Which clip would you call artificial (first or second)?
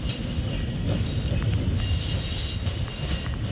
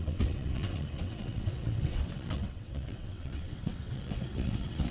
second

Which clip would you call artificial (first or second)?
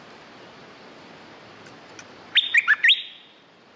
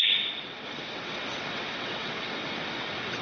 second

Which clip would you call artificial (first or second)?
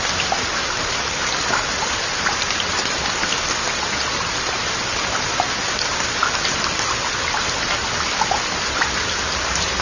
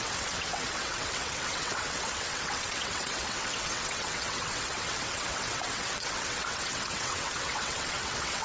second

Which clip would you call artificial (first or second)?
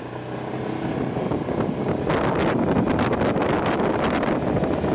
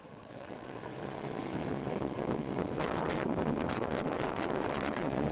second